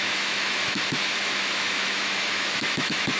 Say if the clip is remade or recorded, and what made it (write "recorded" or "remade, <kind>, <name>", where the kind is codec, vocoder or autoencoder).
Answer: remade, autoencoder, DAC-VAE